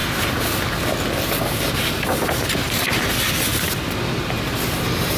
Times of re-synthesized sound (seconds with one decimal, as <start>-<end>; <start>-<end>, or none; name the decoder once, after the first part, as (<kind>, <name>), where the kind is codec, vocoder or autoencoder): 3.5-4.8 (vocoder, BigVGAN v2)